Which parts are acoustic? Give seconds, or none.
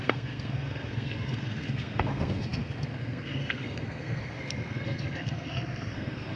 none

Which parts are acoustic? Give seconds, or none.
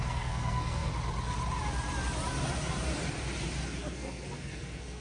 0.9-3.9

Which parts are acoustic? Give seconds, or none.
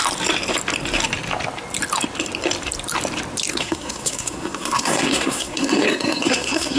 0.0-3.5